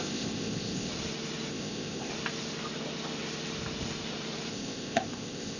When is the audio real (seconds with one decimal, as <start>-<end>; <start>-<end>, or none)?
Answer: 0.9-1.5; 2.1-4.5